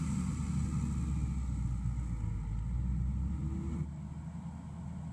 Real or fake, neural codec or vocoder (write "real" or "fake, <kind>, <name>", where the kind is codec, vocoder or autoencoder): real